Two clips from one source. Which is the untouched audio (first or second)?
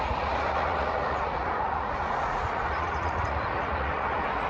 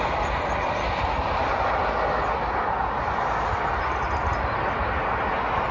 second